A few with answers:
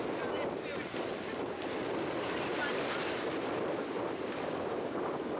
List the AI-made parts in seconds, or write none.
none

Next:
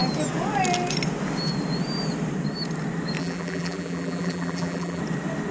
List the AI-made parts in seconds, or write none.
3.2-5.0

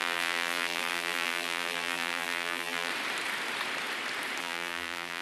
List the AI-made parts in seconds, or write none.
0.0-2.9; 4.4-5.2

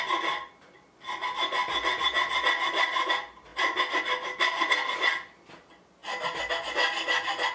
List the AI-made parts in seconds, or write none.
none

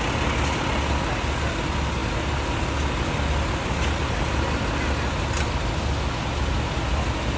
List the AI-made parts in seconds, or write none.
none

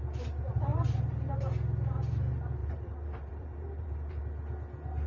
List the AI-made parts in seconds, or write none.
0.7-1.3; 2.6-4.2

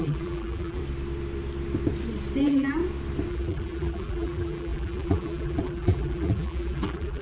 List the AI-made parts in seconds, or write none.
0.0-0.8; 2.4-2.8; 3.3-7.2

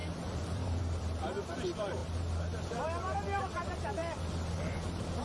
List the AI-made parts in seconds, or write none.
0.0-2.0; 3.4-4.0; 4.6-5.2